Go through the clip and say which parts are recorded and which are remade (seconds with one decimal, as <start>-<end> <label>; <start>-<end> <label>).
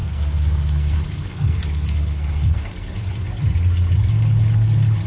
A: 0.0-3.1 remade; 3.1-5.1 recorded